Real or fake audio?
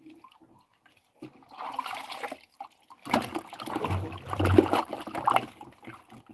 real